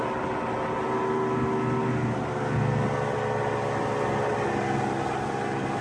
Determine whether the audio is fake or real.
real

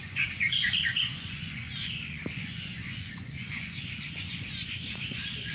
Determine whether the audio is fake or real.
fake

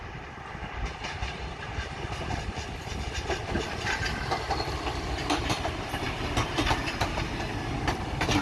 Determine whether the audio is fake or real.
fake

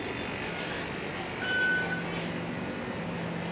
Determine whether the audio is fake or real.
real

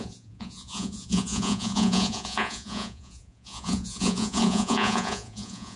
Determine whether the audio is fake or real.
fake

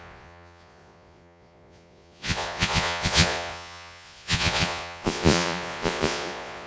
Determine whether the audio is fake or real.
fake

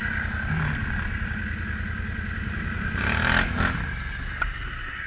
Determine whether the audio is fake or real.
real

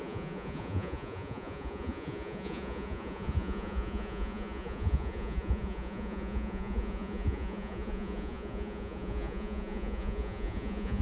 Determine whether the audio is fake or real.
fake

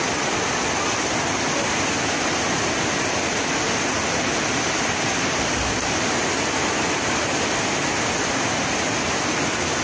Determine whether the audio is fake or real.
real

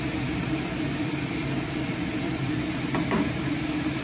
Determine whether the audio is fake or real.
fake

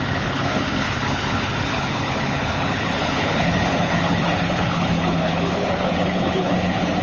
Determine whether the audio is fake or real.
fake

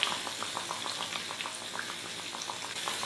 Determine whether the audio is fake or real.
real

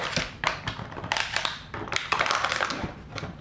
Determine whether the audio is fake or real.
real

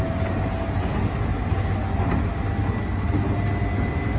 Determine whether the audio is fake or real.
real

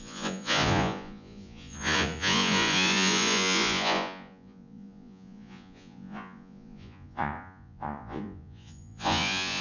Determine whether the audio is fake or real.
fake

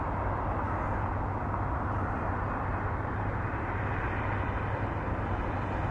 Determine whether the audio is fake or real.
real